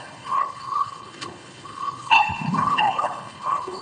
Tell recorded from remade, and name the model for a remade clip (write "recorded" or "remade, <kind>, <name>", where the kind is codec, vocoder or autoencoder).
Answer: remade, codec, HILCodec